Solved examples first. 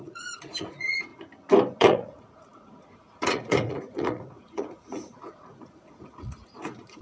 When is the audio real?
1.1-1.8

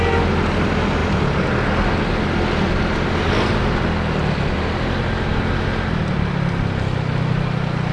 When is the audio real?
0.0-7.9